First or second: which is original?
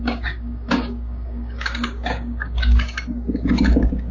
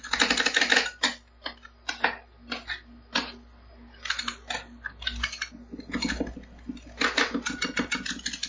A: second